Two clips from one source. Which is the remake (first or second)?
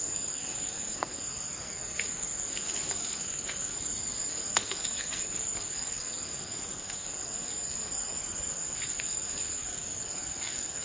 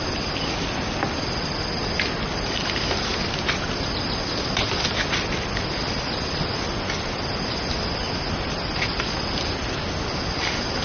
first